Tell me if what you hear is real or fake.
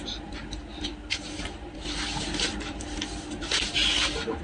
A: real